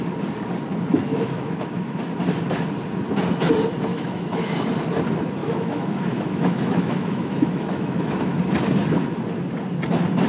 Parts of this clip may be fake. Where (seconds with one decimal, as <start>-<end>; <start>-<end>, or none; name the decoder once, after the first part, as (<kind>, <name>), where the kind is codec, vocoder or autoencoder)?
1.1-2.0 (autoencoder, DAC-VAE); 3.9-4.5; 5.4-8.4